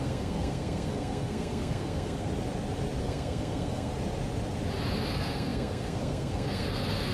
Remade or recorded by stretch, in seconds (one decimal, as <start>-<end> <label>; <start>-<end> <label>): 0.0-2.3 remade; 2.3-3.0 recorded; 3.0-3.9 remade; 3.9-5.1 recorded; 5.1-7.1 remade